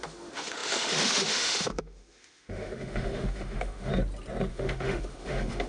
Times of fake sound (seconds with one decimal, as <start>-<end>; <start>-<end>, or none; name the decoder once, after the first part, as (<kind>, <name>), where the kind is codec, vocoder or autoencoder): 0.0-3.9 (autoencoder, DAC-VAE); 4.5-5.7